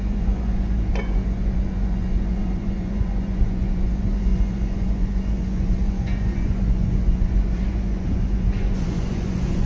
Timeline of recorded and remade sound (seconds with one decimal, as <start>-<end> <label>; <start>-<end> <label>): 0.0-9.7 remade